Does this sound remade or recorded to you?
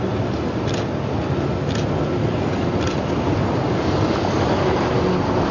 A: recorded